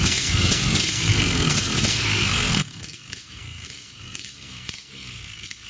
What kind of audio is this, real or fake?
fake